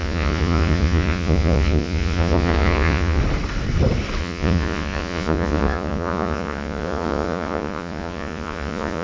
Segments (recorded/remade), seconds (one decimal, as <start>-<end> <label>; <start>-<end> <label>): 0.0-3.2 remade; 3.2-4.2 recorded; 4.2-9.0 remade